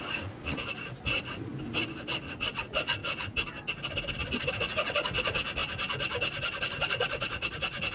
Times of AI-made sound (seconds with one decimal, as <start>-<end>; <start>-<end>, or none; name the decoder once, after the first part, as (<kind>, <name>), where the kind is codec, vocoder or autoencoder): 0.0-1.5 (vocoder, Vocos); 2.2-3.0; 4.5-5.6; 6.6-7.9